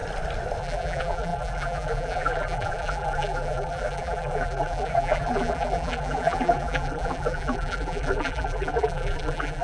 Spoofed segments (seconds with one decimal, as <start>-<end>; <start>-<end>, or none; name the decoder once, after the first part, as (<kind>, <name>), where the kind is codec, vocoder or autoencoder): 0.6-9.6 (vocoder, BigVGAN v2)